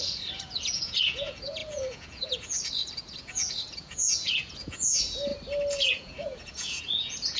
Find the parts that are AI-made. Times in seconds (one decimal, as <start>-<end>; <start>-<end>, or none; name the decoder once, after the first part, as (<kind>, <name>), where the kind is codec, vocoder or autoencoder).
0.0-5.3 (vocoder, Vocos); 5.8-7.4